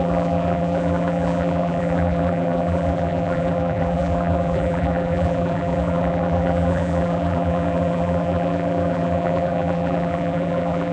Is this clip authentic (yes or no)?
no